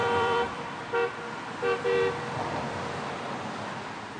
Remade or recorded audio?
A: remade